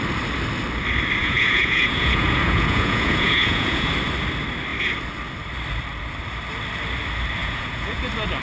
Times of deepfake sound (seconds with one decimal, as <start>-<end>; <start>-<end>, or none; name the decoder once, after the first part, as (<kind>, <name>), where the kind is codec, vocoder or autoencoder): 1.2-3.9 (vocoder, Vocos); 7.4-8.0